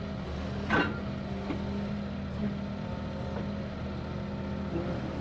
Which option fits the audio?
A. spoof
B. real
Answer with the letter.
B